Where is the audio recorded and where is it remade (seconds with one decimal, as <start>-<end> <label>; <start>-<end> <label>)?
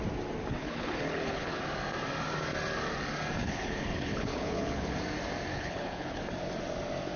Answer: 0.0-0.6 recorded; 0.6-1.6 remade; 1.6-3.4 recorded; 3.4-5.0 remade; 5.0-5.5 recorded; 5.5-6.2 remade; 6.2-7.2 recorded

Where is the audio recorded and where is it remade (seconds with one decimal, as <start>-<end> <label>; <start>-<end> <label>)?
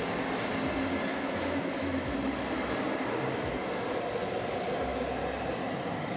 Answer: 0.0-1.1 recorded; 1.1-2.1 remade; 2.1-6.2 recorded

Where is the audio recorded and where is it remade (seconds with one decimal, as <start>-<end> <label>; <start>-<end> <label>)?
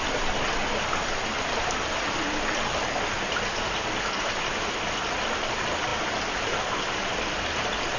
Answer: 0.0-8.0 recorded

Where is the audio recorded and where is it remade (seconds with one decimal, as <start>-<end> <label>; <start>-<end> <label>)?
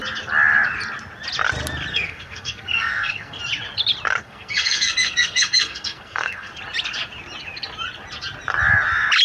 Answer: 0.0-1.9 recorded; 1.9-3.4 remade; 3.4-4.2 recorded; 4.2-6.5 remade; 6.5-9.2 recorded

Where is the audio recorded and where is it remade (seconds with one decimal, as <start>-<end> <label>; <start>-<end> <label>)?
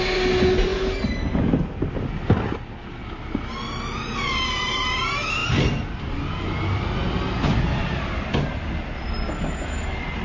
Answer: 0.0-10.2 recorded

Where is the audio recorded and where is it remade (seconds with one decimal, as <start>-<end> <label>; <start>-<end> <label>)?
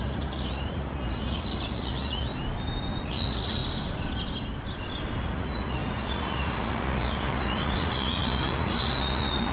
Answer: 0.0-2.3 remade; 2.3-3.0 recorded; 3.0-3.6 remade; 3.6-5.2 recorded; 5.2-9.5 remade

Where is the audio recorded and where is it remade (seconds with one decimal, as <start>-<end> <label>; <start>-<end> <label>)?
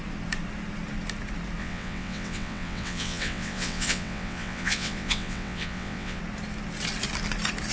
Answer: 0.0-1.6 recorded; 1.6-6.2 remade; 6.2-7.7 recorded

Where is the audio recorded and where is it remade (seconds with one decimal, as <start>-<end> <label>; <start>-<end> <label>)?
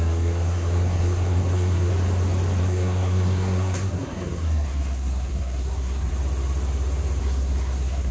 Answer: 0.0-1.9 remade; 1.9-2.6 recorded; 2.6-6.1 remade; 6.1-7.2 recorded; 7.2-8.1 remade